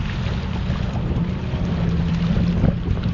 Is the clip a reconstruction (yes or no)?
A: no